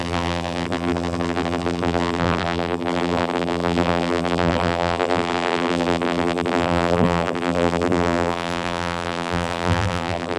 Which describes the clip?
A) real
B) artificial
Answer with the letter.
B